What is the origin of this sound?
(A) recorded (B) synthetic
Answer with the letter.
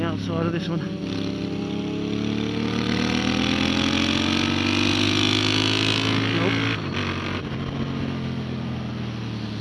A